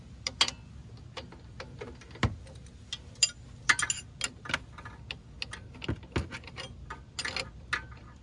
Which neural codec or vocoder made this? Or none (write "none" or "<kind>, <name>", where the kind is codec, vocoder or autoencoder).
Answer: none